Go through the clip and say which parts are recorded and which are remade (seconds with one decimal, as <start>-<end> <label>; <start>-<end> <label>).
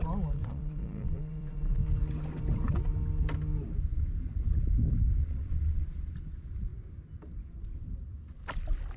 0.0-0.4 recorded; 0.4-1.8 remade; 1.8-5.2 recorded; 5.2-6.1 remade; 6.1-9.0 recorded